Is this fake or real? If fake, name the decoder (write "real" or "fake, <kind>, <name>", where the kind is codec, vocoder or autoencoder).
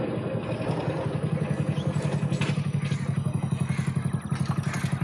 real